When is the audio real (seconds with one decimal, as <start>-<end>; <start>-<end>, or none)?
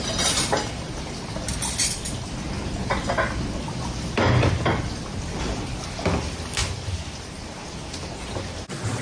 0.0-9.0